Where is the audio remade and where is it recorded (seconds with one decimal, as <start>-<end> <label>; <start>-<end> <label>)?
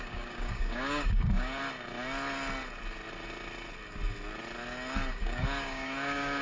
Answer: 0.0-1.6 remade; 1.6-5.1 recorded; 5.1-6.4 remade